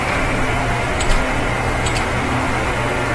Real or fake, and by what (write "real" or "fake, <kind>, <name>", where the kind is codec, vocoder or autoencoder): real